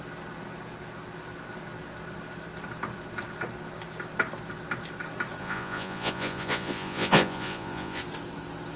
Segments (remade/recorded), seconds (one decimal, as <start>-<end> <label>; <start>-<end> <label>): 0.0-5.4 recorded; 5.4-8.0 remade; 8.0-8.8 recorded

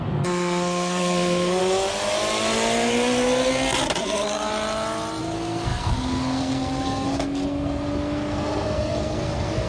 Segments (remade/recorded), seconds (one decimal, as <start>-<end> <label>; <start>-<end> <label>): 0.0-1.6 remade; 1.6-4.0 recorded; 4.0-4.5 remade; 4.5-5.2 recorded; 5.2-9.7 remade

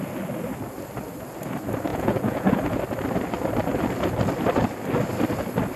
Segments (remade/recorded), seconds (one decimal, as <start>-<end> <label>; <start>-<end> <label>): 0.0-1.9 recorded; 1.9-2.6 remade; 2.6-5.8 recorded

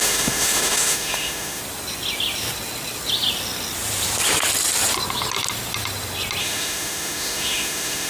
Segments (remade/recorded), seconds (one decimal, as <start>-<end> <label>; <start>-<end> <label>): 0.0-1.6 remade; 1.6-6.4 recorded; 6.4-8.1 remade

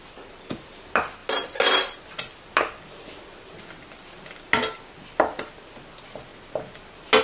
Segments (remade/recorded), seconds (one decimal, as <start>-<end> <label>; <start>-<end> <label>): 0.0-7.2 recorded

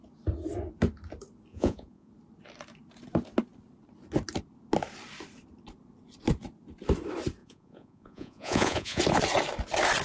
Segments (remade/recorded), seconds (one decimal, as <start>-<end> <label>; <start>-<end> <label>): 0.0-1.5 recorded; 1.5-2.1 remade; 2.1-7.4 recorded; 7.4-9.0 remade; 9.0-10.0 recorded